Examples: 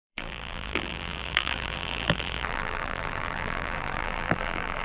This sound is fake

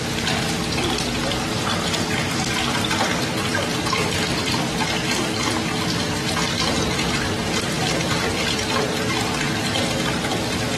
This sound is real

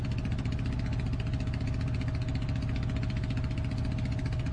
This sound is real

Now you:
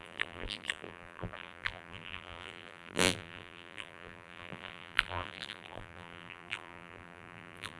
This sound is fake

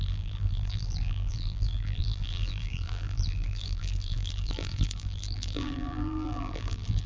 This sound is fake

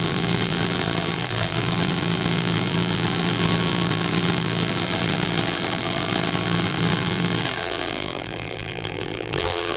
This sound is fake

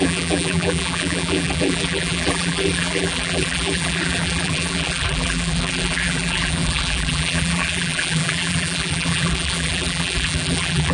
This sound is fake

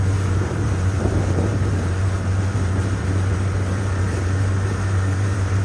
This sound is fake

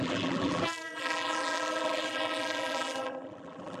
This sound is fake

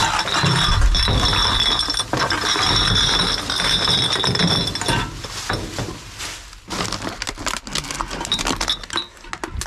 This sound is real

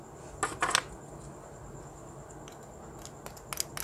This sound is real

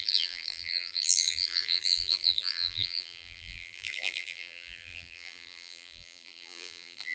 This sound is fake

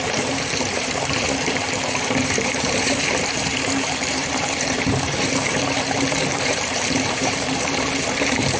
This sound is fake